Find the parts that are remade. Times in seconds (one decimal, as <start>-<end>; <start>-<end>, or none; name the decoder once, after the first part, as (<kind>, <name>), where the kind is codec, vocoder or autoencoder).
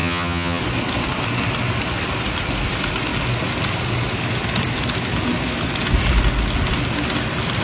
0.0-0.6 (vocoder, HiFi-GAN)